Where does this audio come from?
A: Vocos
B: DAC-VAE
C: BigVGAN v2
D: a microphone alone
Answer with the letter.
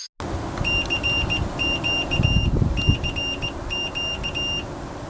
D